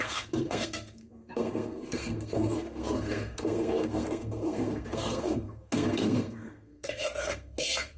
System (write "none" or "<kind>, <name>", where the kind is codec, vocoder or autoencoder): codec, SNAC